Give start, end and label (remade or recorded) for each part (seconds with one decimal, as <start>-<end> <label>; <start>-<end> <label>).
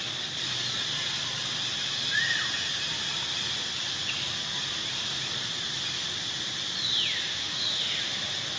0.0-7.4 recorded; 7.4-8.0 remade; 8.0-8.6 recorded